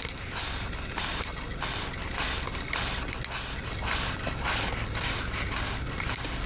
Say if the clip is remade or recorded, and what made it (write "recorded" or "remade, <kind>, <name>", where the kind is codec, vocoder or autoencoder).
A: recorded